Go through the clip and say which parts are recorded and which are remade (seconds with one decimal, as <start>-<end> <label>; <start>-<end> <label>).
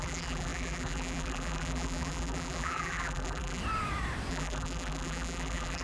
0.0-3.6 remade; 3.6-4.3 recorded; 4.3-5.8 remade